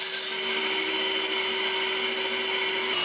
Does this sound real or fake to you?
real